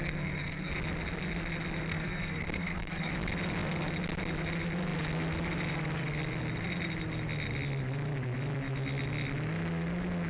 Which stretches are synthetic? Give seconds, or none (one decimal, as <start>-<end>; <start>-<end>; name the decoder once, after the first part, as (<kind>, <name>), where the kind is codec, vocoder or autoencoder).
0.0-0.7 (codec, SNAC); 1.9-3.1